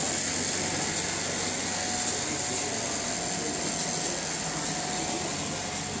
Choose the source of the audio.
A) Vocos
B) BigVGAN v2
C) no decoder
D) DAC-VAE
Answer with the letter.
C